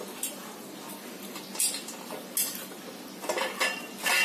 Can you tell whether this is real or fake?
real